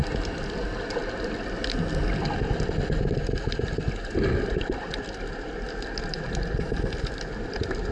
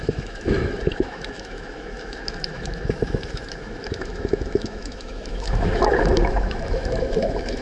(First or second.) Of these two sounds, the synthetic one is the second